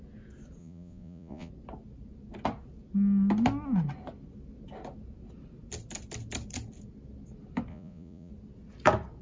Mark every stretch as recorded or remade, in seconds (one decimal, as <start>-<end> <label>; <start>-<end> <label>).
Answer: 0.0-0.6 recorded; 0.6-1.5 remade; 1.5-7.7 recorded; 7.7-8.3 remade; 8.3-9.2 recorded